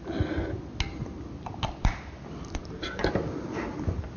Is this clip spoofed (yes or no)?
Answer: no